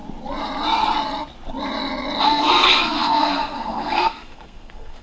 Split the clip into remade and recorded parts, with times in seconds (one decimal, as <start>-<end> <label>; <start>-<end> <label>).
0.0-2.2 recorded; 2.2-5.0 remade